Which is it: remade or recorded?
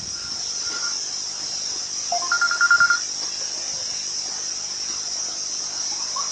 recorded